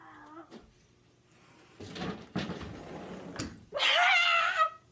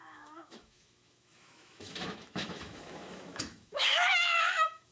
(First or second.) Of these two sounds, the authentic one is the first